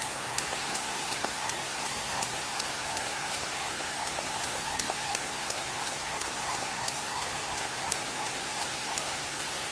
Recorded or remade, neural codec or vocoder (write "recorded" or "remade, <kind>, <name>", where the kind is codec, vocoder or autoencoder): remade, codec, SNAC